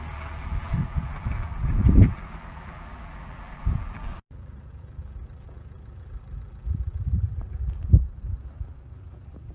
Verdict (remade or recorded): remade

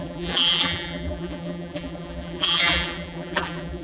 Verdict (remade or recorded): remade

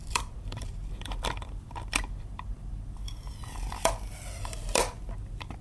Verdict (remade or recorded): remade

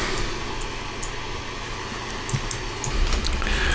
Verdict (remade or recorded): recorded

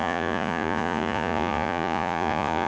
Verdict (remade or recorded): remade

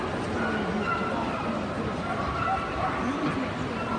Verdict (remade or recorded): recorded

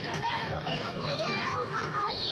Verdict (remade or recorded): remade